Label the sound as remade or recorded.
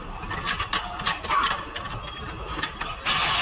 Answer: remade